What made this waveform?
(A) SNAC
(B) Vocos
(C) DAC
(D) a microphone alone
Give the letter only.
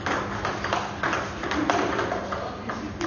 D